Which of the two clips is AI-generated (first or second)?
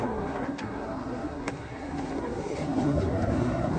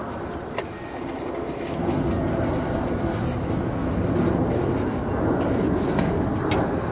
first